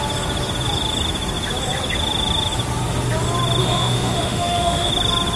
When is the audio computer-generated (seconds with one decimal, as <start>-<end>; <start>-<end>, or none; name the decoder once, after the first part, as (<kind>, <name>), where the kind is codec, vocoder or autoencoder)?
3.6-4.9 (autoencoder, DAC-VAE)

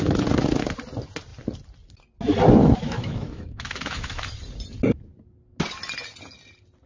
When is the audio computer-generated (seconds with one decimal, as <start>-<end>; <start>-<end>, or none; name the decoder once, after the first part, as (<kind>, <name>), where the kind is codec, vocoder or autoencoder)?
2.6-4.3 (autoencoder, DAC-VAE)

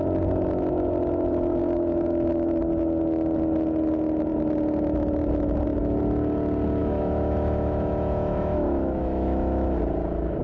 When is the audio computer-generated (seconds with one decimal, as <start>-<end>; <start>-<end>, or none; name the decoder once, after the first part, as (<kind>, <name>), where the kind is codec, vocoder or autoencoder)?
1.6-2.6 (autoencoder, DAC-VAE); 6.8-9.8

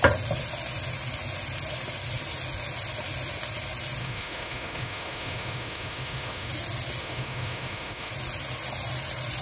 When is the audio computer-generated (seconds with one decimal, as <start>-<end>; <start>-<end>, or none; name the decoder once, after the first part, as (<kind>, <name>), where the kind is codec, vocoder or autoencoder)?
4.0-6.5 (autoencoder, DAC-VAE); 7.0-8.1

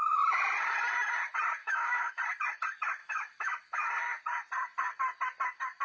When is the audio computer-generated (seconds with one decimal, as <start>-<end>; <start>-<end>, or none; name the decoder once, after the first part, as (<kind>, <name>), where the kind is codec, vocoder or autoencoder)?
1.6-2.2 (autoencoder, DAC-VAE); 3.0-3.9

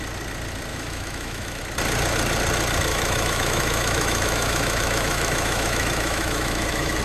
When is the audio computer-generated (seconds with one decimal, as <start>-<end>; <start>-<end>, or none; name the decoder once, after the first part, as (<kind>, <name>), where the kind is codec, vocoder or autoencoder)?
0.7-1.6 (autoencoder, DAC-VAE); 2.9-7.0

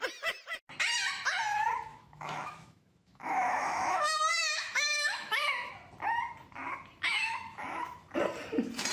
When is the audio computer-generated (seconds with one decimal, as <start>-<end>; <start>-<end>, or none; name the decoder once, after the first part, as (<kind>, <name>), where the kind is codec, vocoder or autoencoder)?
1.9-5.7 (autoencoder, DAC-VAE); 7.1-8.0

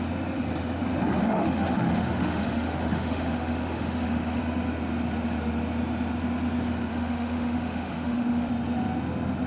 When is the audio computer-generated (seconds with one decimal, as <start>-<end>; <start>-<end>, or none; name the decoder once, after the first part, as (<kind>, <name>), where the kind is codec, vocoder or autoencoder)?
1.2-4.4 (autoencoder, DAC-VAE); 6.9-8.5